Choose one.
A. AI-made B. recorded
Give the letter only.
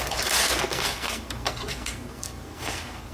A